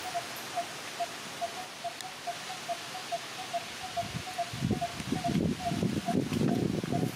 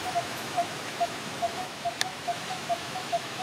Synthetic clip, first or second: second